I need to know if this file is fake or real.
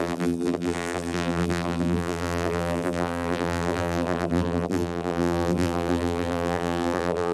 fake